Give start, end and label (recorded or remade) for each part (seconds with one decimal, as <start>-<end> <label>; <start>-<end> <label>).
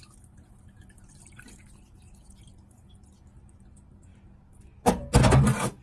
0.0-5.8 recorded